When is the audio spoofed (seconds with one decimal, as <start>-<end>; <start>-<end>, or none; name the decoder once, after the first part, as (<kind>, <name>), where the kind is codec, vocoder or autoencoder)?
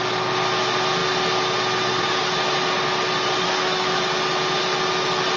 3.4-3.9 (autoencoder, DAC-VAE)